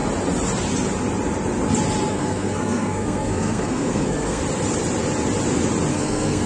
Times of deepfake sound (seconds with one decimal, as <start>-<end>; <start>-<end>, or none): 2.1-4.4; 5.9-6.5